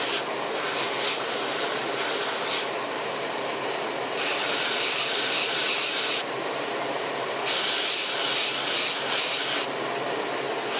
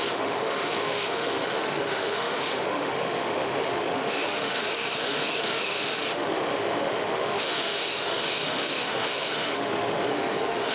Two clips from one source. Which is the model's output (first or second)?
second